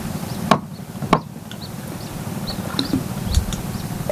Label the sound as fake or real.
real